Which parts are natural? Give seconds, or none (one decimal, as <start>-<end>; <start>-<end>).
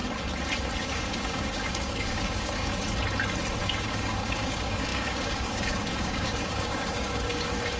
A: 0.0-0.8; 2.7-3.6